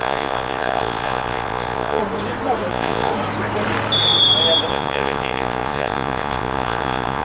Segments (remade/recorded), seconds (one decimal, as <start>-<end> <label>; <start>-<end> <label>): 0.0-2.0 remade; 2.0-2.7 recorded; 2.7-3.1 remade; 3.1-4.7 recorded; 4.7-7.2 remade